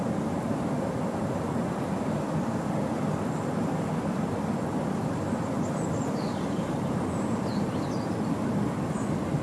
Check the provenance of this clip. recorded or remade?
recorded